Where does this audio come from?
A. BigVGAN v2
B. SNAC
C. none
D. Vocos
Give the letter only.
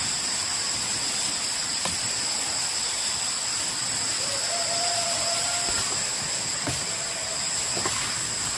C